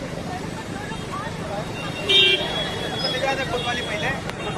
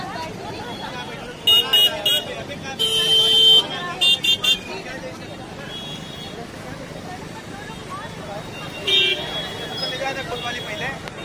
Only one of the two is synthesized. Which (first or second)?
first